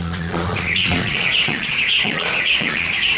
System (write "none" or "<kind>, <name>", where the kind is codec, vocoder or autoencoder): vocoder, Vocos